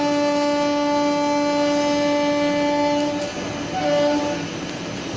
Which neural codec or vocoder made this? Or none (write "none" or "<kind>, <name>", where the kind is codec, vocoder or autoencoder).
none